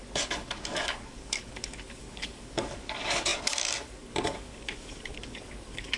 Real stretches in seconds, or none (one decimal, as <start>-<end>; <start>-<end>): none